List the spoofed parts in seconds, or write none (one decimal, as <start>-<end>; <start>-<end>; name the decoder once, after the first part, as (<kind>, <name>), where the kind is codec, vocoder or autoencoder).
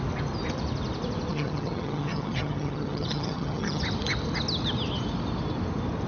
1.3-3.8 (vocoder, HiFi-GAN)